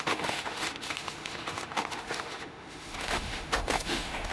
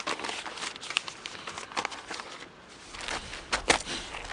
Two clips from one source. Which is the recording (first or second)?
second